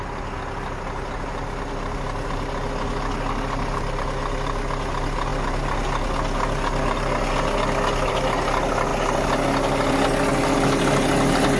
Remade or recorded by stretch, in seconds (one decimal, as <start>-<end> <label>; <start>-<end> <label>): 0.0-11.6 recorded